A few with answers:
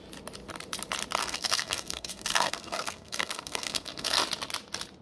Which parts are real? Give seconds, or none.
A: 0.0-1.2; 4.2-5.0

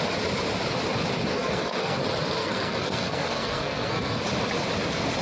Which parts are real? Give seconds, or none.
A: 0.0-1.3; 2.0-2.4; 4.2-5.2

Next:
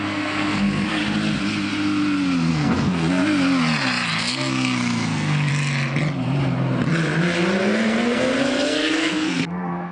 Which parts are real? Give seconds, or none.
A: 1.0-2.5; 3.2-4.2; 5.5-7.6

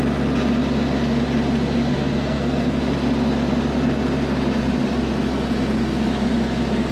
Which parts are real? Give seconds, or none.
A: 0.0-1.9; 2.8-6.9

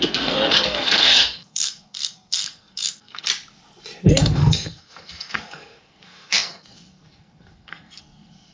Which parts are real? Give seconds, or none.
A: 3.3-4.1

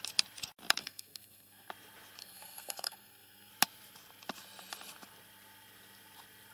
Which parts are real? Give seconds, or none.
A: 0.0-0.8; 1.7-2.2; 3.5-6.5

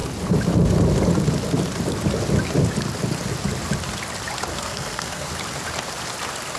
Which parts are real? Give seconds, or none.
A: 0.0-4.5; 5.3-6.6

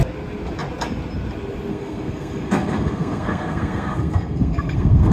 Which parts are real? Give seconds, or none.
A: 0.0-1.7